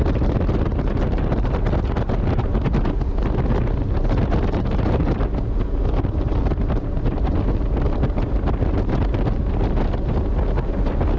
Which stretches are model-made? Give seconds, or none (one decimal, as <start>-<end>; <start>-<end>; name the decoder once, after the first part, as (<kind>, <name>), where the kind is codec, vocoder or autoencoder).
6.4-7.3 (vocoder, BigVGAN v2)

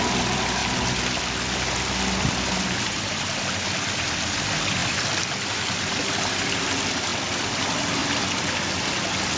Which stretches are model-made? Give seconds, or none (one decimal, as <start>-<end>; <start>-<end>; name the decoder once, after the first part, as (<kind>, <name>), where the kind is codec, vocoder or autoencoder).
none

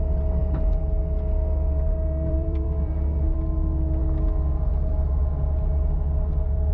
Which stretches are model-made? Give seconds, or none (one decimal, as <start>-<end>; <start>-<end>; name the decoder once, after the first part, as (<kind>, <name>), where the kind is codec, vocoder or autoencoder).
2.3-2.9 (vocoder, BigVGAN v2)

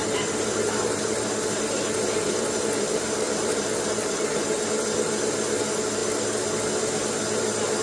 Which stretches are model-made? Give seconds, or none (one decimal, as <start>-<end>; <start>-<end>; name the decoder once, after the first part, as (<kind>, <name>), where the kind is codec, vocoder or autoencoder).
0.0-4.7 (vocoder, BigVGAN v2)

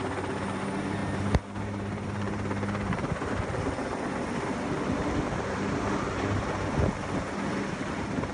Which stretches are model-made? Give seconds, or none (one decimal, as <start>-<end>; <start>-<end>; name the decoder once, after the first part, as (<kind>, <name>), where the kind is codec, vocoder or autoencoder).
1.0-3.3 (vocoder, BigVGAN v2)

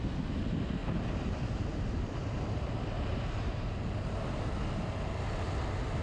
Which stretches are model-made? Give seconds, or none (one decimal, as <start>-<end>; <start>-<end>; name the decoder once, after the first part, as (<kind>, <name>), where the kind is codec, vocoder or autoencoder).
0.8-4.4 (vocoder, BigVGAN v2)

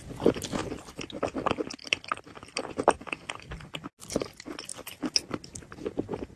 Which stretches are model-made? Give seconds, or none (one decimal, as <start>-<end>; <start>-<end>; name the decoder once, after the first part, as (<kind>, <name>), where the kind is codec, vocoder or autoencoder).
1.8-3.4 (vocoder, BigVGAN v2); 4.7-5.4